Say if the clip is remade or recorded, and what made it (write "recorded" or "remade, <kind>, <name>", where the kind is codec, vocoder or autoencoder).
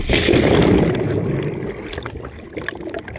recorded